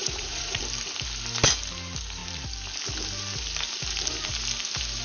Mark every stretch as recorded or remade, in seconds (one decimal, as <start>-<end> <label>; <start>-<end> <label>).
0.0-0.6 remade; 0.6-5.0 recorded